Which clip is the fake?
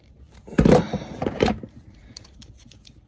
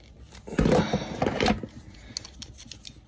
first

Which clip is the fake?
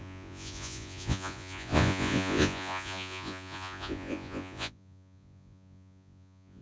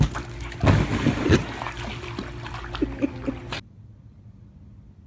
first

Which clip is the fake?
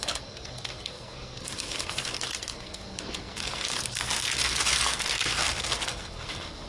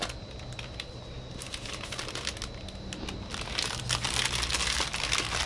first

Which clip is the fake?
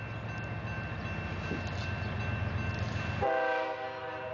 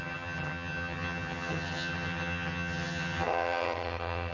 second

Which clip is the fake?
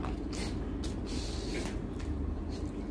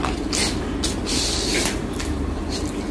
second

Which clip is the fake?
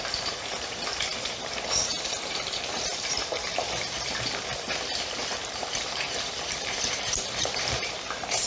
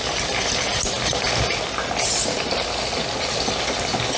first